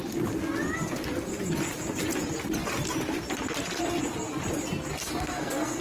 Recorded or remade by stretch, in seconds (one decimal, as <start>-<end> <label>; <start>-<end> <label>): 0.0-5.0 recorded; 5.0-5.8 remade